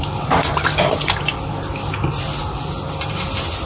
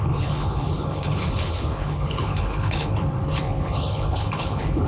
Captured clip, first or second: first